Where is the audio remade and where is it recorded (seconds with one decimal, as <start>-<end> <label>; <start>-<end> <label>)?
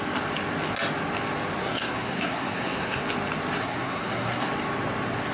0.0-1.6 recorded; 1.6-3.0 remade; 3.0-3.6 recorded; 3.6-4.5 remade; 4.5-5.3 recorded